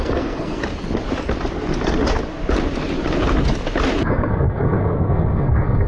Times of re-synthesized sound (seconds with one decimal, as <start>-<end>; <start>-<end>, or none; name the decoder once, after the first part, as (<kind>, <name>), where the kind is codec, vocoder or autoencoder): 0.0-0.6 (codec, SNAC); 4.1-5.9